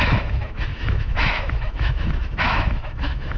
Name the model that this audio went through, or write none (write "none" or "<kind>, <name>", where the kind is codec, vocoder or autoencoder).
autoencoder, DAC-VAE